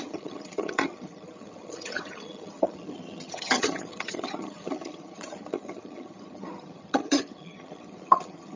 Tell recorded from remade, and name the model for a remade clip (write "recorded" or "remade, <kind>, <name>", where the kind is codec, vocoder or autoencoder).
remade, vocoder, HiFi-GAN